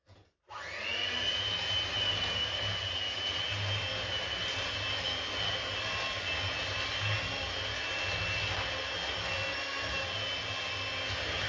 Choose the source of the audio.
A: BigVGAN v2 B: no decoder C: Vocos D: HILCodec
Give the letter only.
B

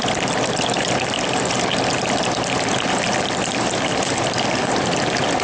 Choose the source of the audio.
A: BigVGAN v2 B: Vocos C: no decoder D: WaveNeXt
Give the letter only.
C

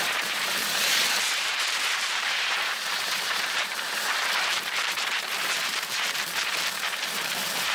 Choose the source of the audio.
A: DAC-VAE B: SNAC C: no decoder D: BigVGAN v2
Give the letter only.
D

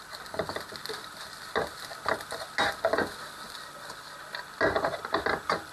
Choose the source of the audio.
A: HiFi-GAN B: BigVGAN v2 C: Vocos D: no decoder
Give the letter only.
D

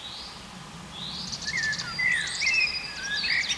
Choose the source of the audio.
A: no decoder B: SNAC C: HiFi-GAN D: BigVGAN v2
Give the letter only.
D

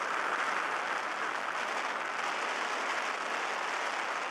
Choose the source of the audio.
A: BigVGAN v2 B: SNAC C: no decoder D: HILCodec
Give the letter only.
C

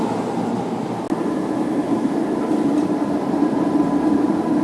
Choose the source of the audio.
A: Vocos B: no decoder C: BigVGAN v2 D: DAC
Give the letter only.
B